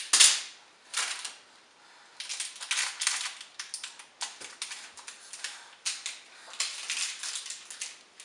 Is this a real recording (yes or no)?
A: yes